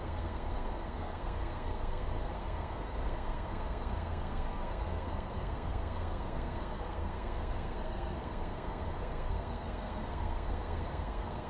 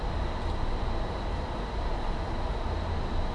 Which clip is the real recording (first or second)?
second